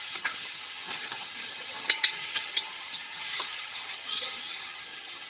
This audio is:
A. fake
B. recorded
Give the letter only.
A